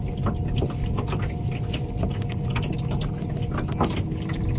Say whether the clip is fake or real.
real